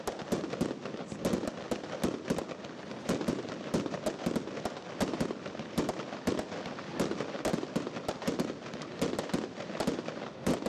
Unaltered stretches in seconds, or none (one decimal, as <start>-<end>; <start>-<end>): 0.0-10.7